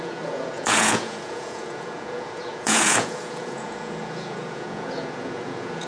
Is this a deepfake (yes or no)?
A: yes